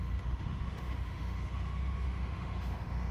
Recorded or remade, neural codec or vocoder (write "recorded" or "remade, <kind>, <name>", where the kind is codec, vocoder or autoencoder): remade, autoencoder, DAC-VAE